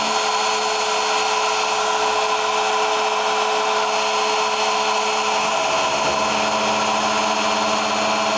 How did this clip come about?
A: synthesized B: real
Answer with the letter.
B